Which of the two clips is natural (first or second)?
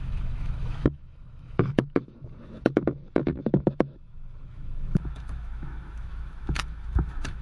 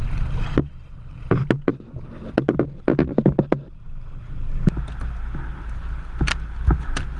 second